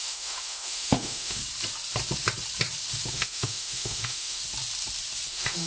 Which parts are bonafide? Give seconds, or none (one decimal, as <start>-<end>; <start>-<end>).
1.4-3.1; 4.4-5.3